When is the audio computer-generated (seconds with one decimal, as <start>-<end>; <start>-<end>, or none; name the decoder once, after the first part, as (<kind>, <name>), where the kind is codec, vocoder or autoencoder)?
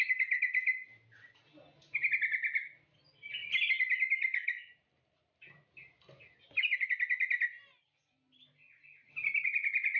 none